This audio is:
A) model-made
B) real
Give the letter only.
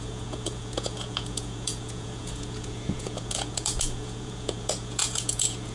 A